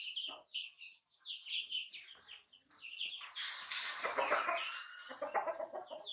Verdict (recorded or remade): recorded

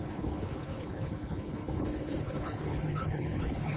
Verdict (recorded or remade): remade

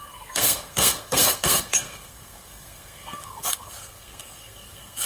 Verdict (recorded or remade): remade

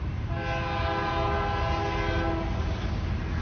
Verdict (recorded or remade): recorded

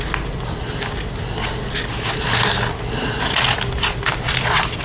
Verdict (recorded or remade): recorded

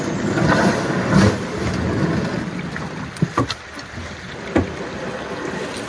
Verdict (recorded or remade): recorded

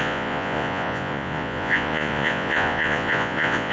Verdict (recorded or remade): remade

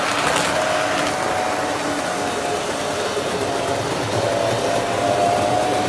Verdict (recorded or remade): recorded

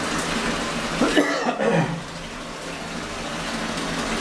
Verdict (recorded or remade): recorded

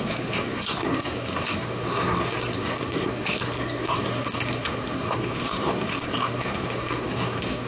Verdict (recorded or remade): remade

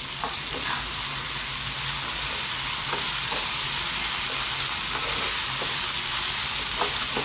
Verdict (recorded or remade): recorded